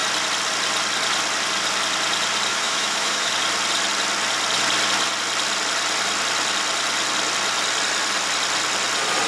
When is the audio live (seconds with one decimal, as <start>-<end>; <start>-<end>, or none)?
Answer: 0.0-2.5; 3.3-9.3